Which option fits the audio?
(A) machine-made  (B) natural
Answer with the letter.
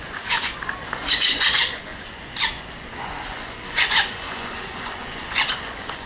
A